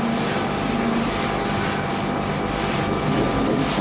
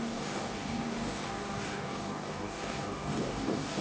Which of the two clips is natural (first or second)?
first